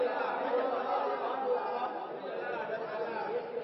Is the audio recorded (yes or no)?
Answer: yes